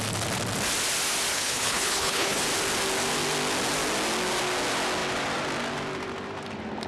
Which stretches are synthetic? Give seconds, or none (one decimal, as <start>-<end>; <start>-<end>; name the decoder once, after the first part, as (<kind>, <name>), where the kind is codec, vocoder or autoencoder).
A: 1.3-2.4 (codec, HILCodec)